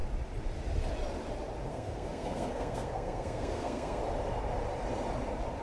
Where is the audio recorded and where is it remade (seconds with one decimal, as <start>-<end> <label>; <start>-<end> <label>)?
0.0-1.7 recorded; 1.7-4.0 remade; 4.0-5.6 recorded